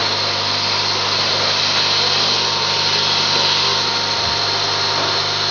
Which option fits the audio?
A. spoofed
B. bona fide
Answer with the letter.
A